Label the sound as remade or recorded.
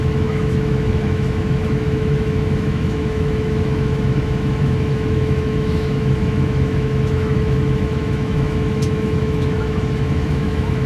remade